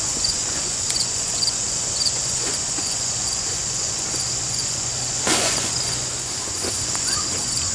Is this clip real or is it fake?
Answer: fake